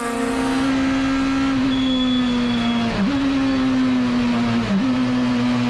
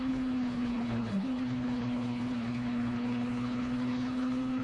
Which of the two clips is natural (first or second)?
first